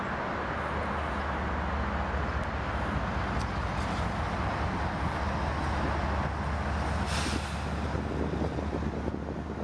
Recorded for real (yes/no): yes